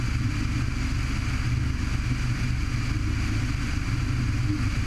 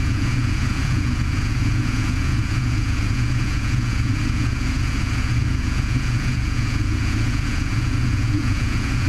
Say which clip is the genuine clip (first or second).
first